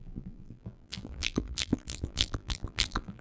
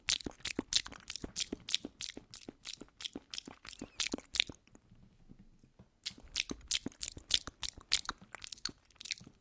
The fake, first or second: first